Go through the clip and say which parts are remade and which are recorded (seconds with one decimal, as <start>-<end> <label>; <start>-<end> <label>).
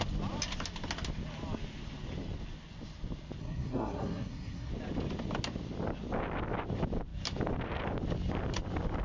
0.0-3.4 recorded; 3.4-4.7 remade; 4.7-9.0 recorded